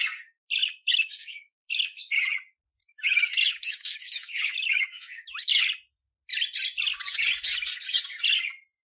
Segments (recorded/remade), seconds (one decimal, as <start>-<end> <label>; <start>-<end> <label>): 0.0-0.6 recorded; 0.6-2.2 remade; 2.2-2.8 recorded; 2.8-5.7 remade; 5.7-8.9 recorded